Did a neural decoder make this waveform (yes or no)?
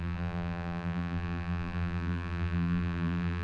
yes